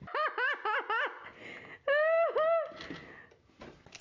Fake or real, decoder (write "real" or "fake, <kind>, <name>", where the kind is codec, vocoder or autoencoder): real